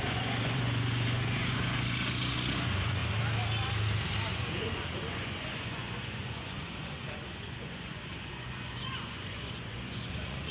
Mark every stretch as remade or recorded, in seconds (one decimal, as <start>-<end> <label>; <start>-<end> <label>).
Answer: 0.0-3.0 remade; 3.0-4.3 recorded; 4.3-10.5 remade